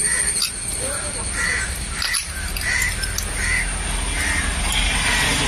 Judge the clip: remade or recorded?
recorded